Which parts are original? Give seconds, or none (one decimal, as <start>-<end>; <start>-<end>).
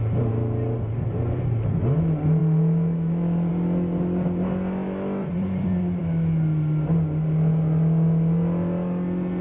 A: 0.0-5.2; 6.0-9.4